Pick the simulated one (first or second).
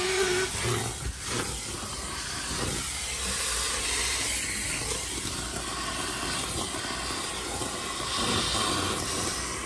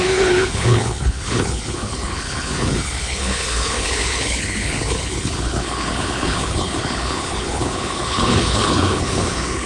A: second